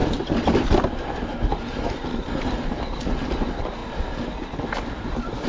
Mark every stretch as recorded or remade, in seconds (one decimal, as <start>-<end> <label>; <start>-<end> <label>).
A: 0.0-5.5 recorded